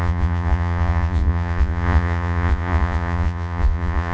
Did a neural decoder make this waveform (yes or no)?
yes